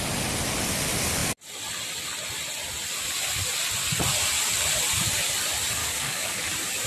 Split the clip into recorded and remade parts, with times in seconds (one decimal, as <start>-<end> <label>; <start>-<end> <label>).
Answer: 0.0-5.8 recorded; 5.8-6.5 remade; 6.5-6.9 recorded